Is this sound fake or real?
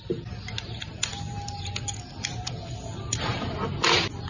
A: real